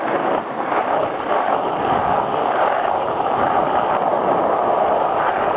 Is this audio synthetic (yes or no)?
no